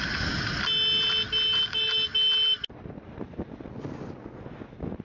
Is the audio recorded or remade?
recorded